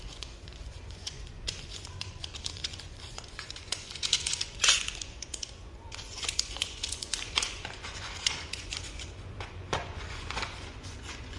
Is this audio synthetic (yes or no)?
yes